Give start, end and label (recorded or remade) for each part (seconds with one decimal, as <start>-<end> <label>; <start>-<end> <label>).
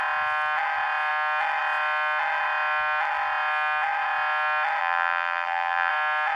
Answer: 0.0-4.8 recorded; 4.8-5.9 remade; 5.9-6.4 recorded